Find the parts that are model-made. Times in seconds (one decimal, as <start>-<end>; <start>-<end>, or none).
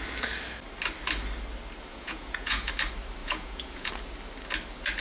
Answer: 1.9-2.7; 3.2-3.9